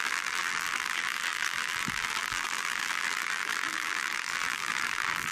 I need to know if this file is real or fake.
fake